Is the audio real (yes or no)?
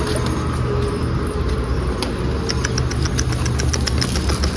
yes